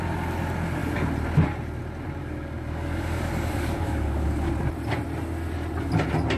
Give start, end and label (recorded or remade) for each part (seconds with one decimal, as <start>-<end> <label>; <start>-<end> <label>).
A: 0.0-2.2 recorded; 2.2-4.5 remade; 4.5-6.4 recorded